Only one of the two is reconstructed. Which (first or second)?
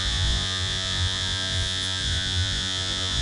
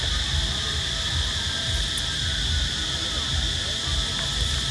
first